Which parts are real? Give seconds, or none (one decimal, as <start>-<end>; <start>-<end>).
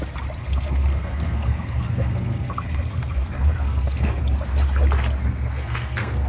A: 0.0-0.4; 4.2-5.2